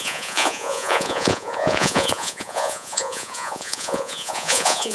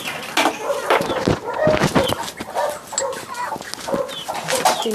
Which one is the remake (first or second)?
first